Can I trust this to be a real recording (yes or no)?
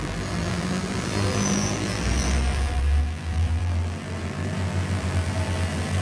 no